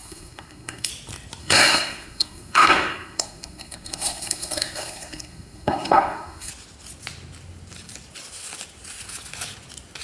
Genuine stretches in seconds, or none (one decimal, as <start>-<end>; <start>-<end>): 0.9-1.4; 6.5-10.0